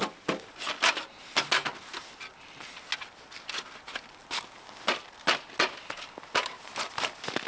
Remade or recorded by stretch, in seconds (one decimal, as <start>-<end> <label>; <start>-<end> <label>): 0.0-7.5 recorded